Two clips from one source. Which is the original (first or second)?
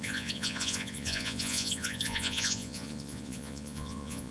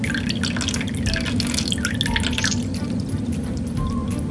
second